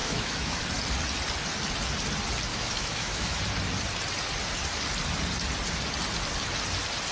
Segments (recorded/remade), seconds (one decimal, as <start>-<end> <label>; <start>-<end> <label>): 0.0-0.6 remade; 0.6-2.5 recorded; 2.5-3.4 remade; 3.4-7.1 recorded